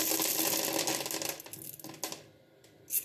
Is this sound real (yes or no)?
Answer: yes